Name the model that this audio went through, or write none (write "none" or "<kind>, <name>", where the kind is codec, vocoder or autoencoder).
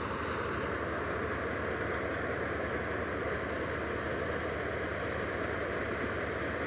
none